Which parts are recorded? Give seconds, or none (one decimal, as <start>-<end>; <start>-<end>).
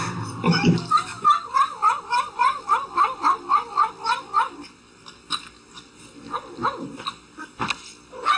0.0-1.1; 3.2-8.4